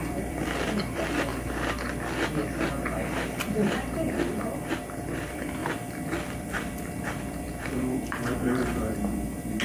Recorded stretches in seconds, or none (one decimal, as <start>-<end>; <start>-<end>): 1.3-3.4